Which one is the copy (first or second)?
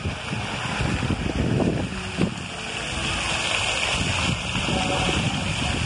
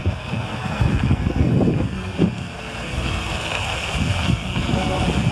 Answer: second